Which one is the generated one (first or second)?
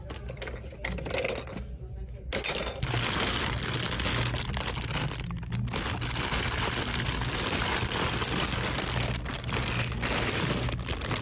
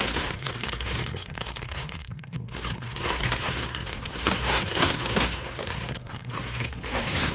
second